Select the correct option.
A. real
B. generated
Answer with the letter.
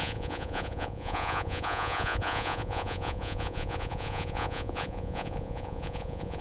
B